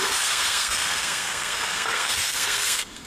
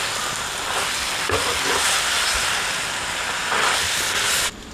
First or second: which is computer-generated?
first